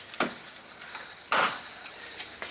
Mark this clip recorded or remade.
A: recorded